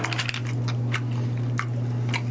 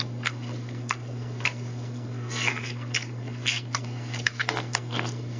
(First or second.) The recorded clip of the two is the first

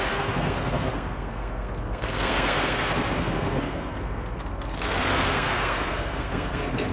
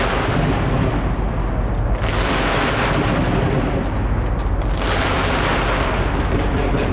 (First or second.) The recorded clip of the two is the second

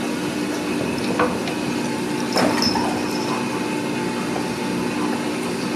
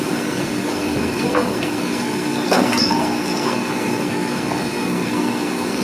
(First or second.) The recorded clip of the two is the first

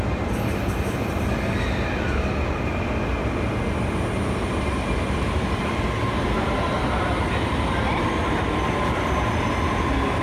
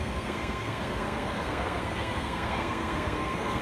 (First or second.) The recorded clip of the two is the first